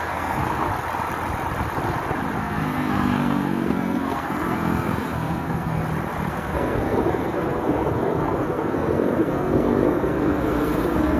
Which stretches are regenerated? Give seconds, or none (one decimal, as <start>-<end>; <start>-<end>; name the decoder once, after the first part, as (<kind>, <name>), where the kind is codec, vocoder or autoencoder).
0.0-0.7 (codec, SNAC); 2.4-5.8; 6.3-11.2